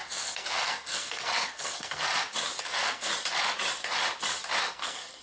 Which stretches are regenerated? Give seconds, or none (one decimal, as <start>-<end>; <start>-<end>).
0.0-2.1; 2.6-3.1; 4.6-5.2